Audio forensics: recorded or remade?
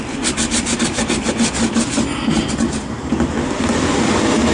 recorded